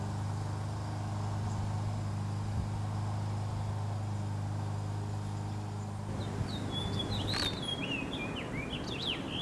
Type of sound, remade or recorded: recorded